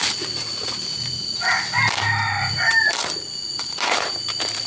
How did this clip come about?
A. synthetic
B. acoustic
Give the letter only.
B